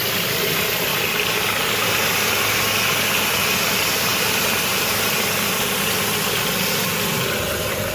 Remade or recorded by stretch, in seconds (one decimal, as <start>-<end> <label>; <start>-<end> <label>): 0.0-7.9 recorded